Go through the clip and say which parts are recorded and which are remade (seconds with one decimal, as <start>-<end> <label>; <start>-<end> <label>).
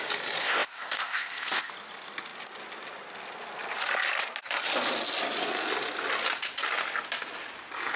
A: 0.0-0.4 recorded; 0.4-1.7 remade; 1.7-8.0 recorded